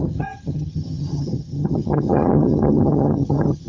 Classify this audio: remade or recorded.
remade